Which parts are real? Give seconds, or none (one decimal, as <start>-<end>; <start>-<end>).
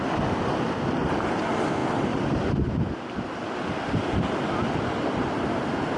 0.0-6.0